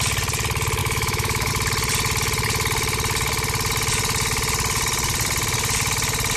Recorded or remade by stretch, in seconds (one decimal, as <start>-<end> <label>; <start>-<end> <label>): 0.0-0.8 recorded; 0.8-1.5 remade; 1.5-6.4 recorded